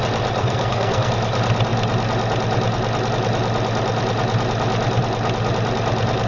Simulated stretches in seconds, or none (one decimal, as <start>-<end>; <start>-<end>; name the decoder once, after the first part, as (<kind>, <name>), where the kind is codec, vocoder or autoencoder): 0.4-1.1 (codec, SNAC)